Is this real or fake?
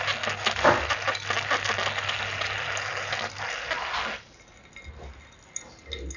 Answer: real